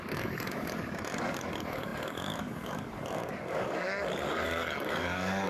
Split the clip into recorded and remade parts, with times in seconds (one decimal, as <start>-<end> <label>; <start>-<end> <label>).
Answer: 0.0-5.5 remade